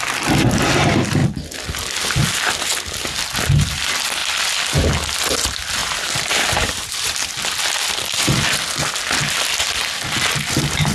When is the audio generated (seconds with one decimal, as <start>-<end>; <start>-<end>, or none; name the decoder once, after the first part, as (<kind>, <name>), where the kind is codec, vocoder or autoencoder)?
5.8-6.9 (vocoder, BigVGAN v2)